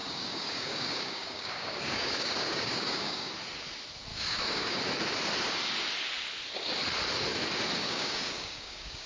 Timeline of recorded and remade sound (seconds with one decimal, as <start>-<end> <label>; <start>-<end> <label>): 0.0-3.3 remade; 3.3-4.1 recorded; 4.1-4.8 remade; 4.8-7.8 recorded; 7.8-9.1 remade